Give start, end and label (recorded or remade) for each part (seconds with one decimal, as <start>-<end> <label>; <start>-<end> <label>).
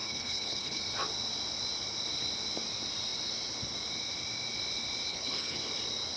0.0-0.8 remade; 0.8-5.1 recorded; 5.1-5.6 remade; 5.6-6.2 recorded